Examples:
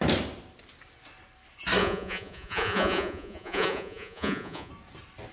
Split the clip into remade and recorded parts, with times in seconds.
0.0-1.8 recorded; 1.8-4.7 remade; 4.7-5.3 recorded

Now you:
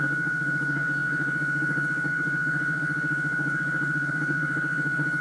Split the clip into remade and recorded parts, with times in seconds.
0.0-5.2 remade

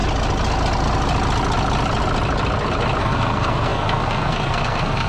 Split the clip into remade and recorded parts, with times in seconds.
0.0-3.0 recorded; 3.0-5.1 remade

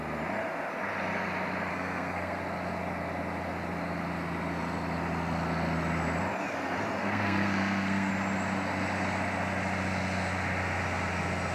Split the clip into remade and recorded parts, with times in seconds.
0.0-1.7 recorded; 1.7-2.4 remade; 2.4-7.0 recorded; 7.0-8.1 remade; 8.1-11.5 recorded

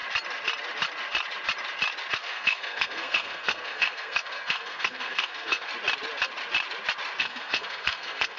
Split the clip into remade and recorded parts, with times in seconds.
0.0-2.1 recorded; 2.1-5.7 remade; 5.7-7.2 recorded; 7.2-8.4 remade

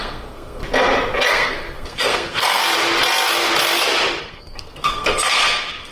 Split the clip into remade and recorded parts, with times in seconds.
0.0-0.6 remade; 0.6-1.3 recorded; 1.3-2.6 remade; 2.6-4.2 recorded; 4.2-5.9 remade

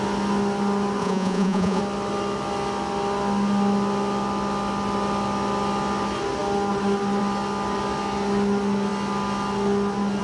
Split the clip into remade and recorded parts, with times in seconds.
0.0-1.0 recorded; 1.0-1.8 remade; 1.8-10.2 recorded